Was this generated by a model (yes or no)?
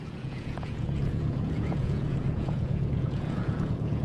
yes